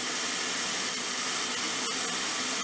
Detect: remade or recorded recorded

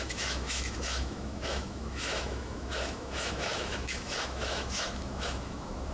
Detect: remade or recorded remade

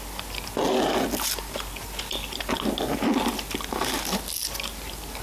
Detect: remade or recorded remade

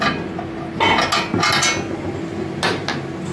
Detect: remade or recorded recorded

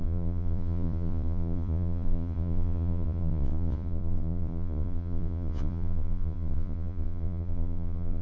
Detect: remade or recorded remade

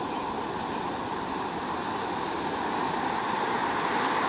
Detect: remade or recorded recorded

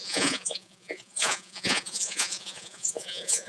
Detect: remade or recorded remade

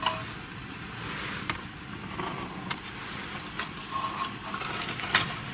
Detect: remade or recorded recorded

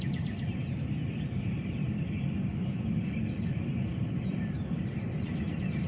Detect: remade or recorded remade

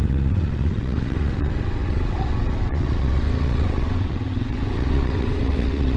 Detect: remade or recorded remade